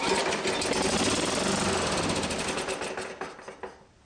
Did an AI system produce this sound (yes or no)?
no